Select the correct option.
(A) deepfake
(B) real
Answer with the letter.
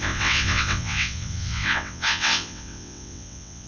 A